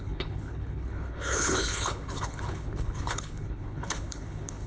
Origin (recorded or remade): remade